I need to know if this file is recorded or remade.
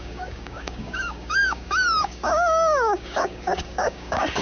remade